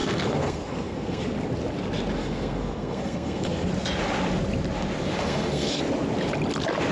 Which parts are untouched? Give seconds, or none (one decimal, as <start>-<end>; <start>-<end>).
1.2-2.2; 3.7-5.2; 5.8-6.9